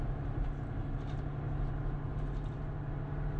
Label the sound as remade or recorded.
recorded